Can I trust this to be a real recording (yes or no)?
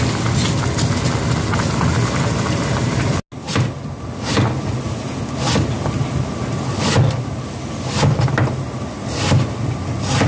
yes